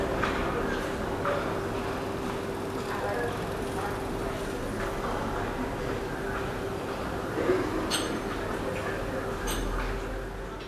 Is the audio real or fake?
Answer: real